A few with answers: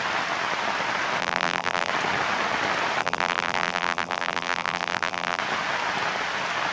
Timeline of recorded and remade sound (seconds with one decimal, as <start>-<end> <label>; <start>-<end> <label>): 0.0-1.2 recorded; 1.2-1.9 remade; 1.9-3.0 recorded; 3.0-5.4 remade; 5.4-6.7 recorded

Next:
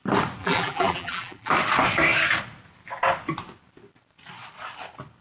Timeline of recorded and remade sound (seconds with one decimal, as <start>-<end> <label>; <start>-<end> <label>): 0.0-0.4 recorded; 0.4-1.5 remade; 1.5-5.2 recorded

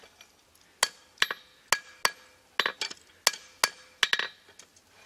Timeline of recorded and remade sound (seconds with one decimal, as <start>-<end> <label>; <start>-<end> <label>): 0.0-5.1 recorded

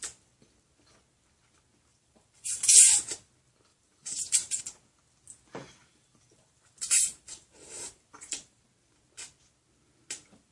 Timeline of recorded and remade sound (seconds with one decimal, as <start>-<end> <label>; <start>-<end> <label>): 0.0-1.9 recorded; 1.9-2.6 remade; 2.6-3.7 recorded; 3.7-4.6 remade; 4.6-5.9 recorded; 5.9-8.6 remade; 8.6-10.5 recorded

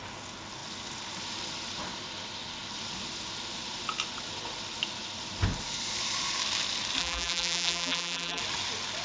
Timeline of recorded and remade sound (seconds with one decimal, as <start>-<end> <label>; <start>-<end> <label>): 0.0-7.0 recorded; 7.0-8.4 remade; 8.4-9.0 recorded

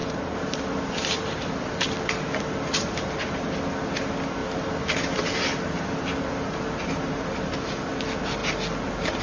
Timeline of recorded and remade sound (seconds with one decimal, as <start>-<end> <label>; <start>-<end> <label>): 0.0-3.2 remade; 3.2-4.4 recorded; 4.4-5.4 remade; 5.4-9.2 recorded